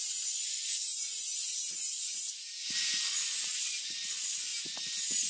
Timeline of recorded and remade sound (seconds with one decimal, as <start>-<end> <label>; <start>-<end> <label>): 0.0-0.9 recorded; 0.9-4.1 remade; 4.1-5.3 recorded

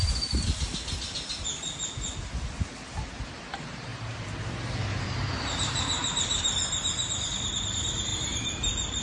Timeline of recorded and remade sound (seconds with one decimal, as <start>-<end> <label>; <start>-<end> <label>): 0.0-1.5 remade; 1.5-3.5 recorded; 3.5-3.9 remade; 3.9-5.0 recorded; 5.0-9.0 remade

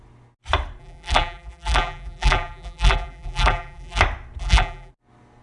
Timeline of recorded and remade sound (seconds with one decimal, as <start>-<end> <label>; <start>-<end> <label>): 0.0-0.8 recorded; 0.8-4.0 remade; 4.0-4.4 recorded; 4.4-4.9 remade; 4.9-5.4 recorded

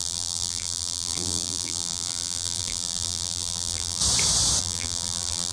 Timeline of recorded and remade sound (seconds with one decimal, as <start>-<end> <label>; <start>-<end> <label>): 0.0-4.0 remade; 4.0-4.6 recorded; 4.6-5.5 remade

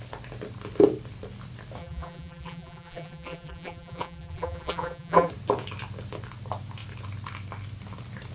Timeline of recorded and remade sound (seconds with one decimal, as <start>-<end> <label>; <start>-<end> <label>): 0.0-1.8 recorded; 1.8-5.3 remade; 5.3-8.3 recorded